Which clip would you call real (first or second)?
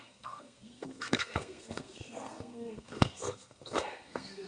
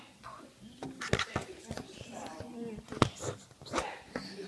second